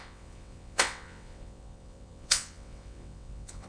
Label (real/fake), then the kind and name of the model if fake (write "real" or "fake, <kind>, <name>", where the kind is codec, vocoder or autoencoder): fake, vocoder, WaveNeXt